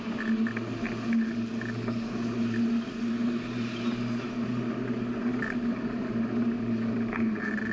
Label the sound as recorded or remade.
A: recorded